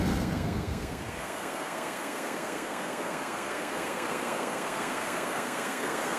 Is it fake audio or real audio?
fake